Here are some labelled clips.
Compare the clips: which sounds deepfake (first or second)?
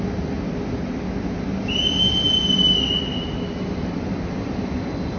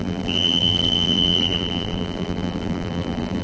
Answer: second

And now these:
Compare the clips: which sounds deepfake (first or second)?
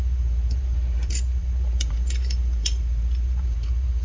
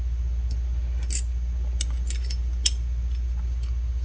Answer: first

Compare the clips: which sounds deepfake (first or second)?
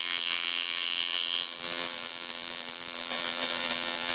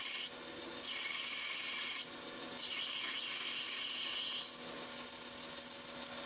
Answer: first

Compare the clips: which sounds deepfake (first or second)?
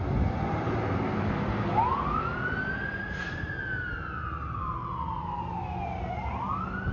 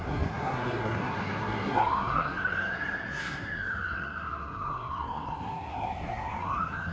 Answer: second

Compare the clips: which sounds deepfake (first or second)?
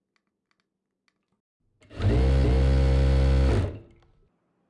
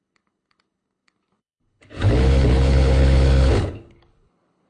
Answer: second